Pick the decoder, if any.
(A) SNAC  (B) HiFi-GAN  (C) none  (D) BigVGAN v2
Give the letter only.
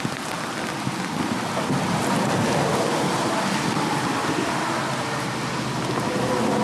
C